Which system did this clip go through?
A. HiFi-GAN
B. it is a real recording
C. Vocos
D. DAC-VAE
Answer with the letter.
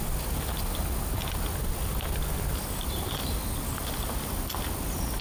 B